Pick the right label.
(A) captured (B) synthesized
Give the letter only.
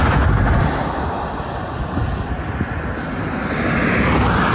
A